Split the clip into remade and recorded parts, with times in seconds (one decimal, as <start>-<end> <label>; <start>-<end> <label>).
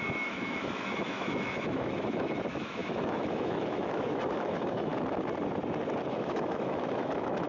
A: 0.0-4.9 remade; 4.9-6.1 recorded; 6.1-7.5 remade